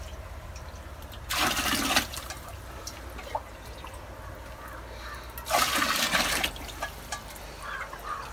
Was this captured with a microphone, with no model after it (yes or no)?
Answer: no